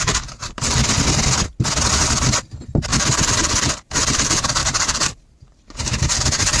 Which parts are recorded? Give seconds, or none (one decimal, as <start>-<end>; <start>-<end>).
0.8-1.9

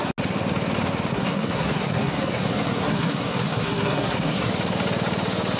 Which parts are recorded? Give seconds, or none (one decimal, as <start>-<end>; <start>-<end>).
0.0-1.1; 4.5-5.6

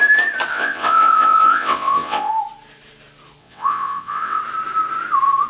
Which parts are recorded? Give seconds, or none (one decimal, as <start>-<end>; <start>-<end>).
0.0-0.5; 2.3-3.4; 4.4-5.5

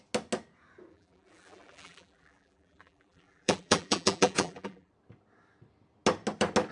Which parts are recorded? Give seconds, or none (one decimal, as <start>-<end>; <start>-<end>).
0.0-0.9; 4.9-6.7